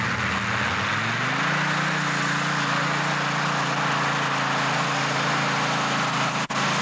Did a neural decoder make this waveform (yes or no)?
no